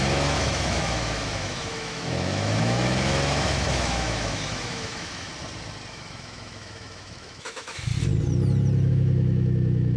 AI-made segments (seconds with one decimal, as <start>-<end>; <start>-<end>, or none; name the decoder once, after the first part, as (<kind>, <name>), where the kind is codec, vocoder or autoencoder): 0.0-5.3 (autoencoder, DAC-VAE); 5.9-7.9; 8.9-10.0